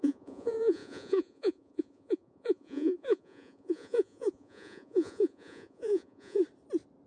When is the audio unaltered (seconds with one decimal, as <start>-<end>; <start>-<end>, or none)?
6.4-7.1